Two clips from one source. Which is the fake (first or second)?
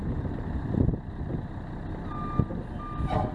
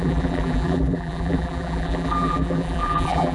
second